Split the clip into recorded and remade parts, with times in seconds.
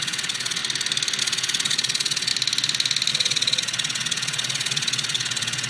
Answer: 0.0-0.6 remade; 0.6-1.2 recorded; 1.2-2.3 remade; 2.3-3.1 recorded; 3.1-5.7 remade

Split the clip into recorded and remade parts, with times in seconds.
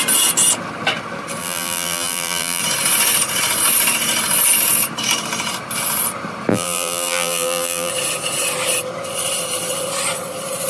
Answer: 0.0-1.4 recorded; 1.4-2.6 remade; 2.6-6.5 recorded; 6.5-7.9 remade; 7.9-10.7 recorded